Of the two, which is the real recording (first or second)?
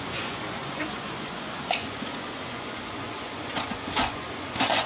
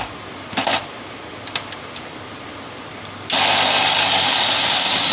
second